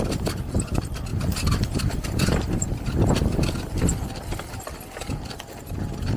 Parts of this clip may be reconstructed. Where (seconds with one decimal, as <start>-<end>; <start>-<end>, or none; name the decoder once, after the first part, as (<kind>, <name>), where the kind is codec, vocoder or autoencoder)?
none